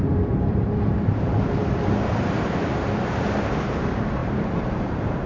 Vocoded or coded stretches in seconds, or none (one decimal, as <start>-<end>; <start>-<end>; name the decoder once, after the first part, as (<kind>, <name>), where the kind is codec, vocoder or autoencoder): 0.0-5.3 (vocoder, BigVGAN v2)